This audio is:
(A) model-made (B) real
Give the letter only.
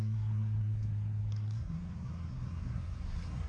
A